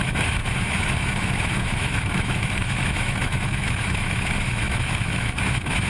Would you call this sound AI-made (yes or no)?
yes